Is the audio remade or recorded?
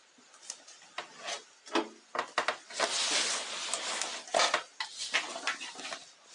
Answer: recorded